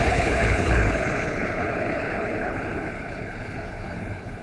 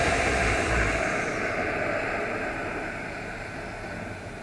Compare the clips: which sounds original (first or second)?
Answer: second